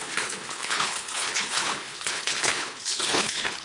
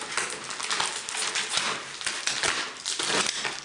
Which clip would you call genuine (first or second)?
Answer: second